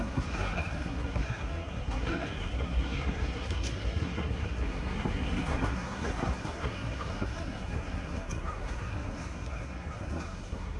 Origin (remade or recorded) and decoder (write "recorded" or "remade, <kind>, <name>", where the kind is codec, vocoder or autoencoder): remade, codec, SNAC